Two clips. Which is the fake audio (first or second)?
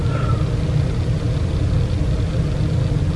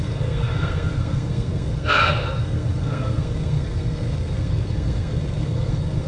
second